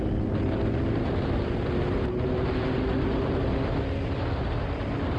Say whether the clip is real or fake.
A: real